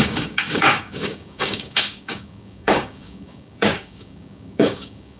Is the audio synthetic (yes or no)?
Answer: yes